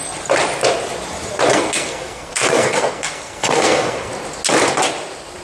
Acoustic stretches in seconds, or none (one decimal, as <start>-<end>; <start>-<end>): 0.0-1.5; 4.1-5.4